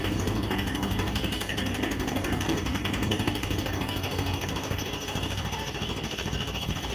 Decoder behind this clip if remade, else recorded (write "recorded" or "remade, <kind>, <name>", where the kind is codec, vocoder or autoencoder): remade, codec, DAC